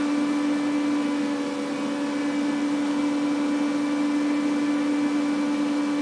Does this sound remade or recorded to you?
recorded